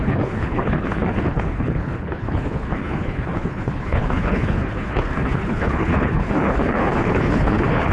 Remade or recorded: remade